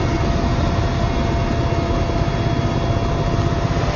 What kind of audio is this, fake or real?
real